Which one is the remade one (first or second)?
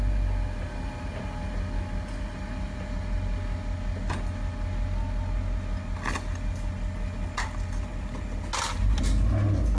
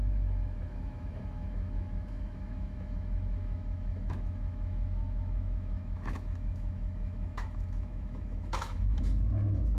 second